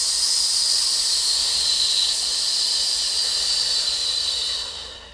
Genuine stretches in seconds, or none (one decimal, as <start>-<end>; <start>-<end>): 0.0-1.4; 4.1-5.1